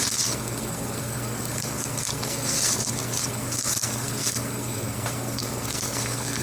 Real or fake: fake